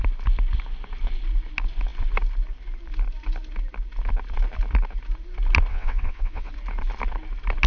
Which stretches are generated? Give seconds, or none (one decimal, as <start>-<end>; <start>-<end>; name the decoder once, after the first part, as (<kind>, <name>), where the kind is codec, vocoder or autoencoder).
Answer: 5.7-6.5 (vocoder, WaveNeXt)